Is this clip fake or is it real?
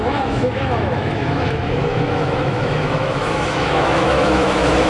fake